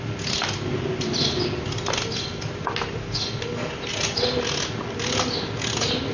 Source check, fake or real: real